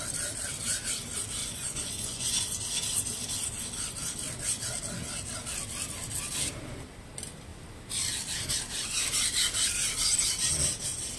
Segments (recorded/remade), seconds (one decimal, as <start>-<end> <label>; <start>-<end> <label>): 0.0-1.4 recorded; 1.4-2.4 remade; 2.4-11.2 recorded